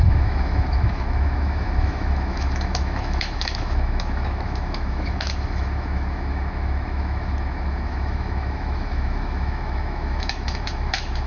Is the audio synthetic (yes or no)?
yes